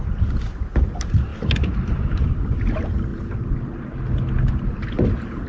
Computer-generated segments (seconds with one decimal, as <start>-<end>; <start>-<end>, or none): none